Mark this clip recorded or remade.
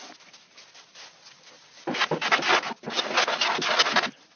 recorded